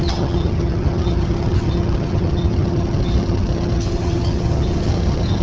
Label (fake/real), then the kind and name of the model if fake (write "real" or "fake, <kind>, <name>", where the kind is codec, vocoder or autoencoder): fake, vocoder, HiFi-GAN